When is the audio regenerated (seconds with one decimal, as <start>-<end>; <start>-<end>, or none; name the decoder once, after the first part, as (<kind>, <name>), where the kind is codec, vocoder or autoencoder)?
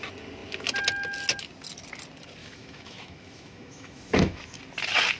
2.4-4.6 (autoencoder, DAC-VAE)